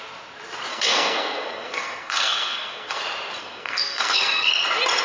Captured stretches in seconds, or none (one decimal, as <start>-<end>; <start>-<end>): 0.0-0.7; 3.0-3.4; 4.5-5.0